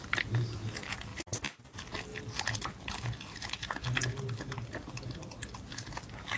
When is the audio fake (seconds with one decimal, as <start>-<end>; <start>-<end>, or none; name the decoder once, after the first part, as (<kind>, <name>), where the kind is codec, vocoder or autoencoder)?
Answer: none